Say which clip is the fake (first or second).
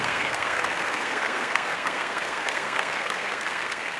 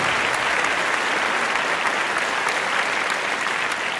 first